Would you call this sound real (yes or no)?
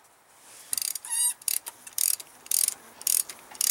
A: yes